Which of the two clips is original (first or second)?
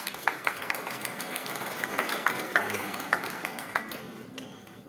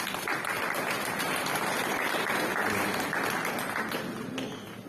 second